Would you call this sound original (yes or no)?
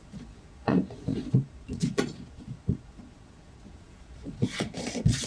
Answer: no